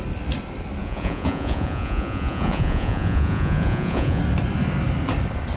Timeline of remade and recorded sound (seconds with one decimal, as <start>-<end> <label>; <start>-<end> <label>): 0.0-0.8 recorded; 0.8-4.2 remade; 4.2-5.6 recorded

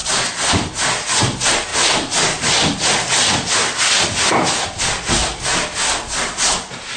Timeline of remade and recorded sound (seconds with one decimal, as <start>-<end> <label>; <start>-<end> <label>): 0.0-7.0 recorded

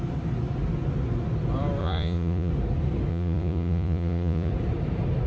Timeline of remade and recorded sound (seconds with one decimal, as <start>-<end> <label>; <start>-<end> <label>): 0.0-1.8 recorded; 1.8-2.5 remade; 2.5-3.1 recorded; 3.1-4.5 remade; 4.5-5.3 recorded

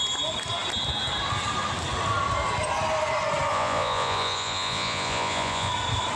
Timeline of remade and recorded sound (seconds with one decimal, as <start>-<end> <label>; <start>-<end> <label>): 0.0-3.5 recorded; 3.5-5.7 remade; 5.7-6.2 recorded

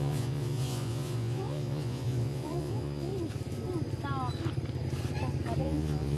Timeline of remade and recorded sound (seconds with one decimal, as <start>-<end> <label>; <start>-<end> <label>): 0.0-3.1 remade; 3.1-5.6 recorded; 5.6-6.2 remade